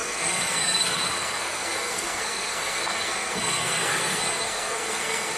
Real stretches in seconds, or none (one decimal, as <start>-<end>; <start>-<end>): none